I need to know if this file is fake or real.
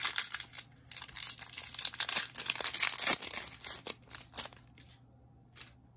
real